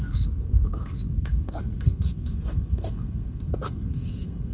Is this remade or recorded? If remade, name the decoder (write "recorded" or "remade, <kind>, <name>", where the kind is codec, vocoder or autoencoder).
remade, codec, SNAC